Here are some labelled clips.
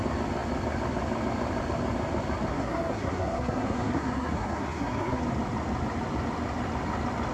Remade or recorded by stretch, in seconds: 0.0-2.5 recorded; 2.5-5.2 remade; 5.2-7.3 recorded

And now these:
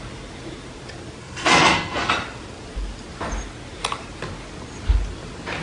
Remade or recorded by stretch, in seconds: 0.0-1.2 recorded; 1.2-2.1 remade; 2.1-5.6 recorded